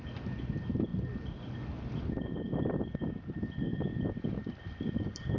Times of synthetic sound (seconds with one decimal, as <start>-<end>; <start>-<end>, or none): none